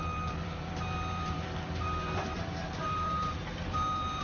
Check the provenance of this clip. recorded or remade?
remade